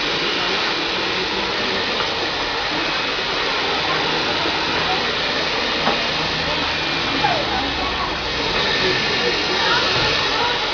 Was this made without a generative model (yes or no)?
yes